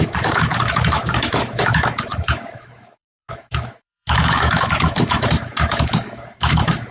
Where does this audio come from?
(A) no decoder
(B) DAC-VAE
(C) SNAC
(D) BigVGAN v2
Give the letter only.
B